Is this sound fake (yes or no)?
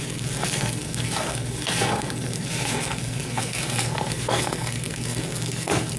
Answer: yes